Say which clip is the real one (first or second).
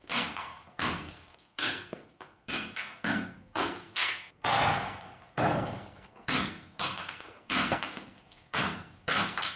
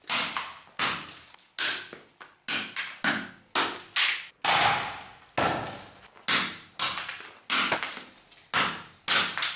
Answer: second